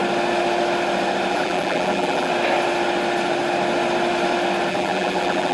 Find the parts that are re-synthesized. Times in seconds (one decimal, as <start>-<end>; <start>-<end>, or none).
1.3-2.3; 4.7-5.5